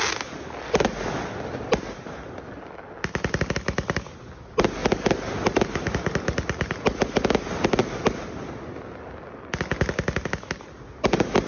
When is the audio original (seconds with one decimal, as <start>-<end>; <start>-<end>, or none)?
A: 0.0-11.5